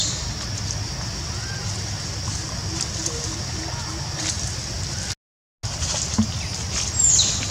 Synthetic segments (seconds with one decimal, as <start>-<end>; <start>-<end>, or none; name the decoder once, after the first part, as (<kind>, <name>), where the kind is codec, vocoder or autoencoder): none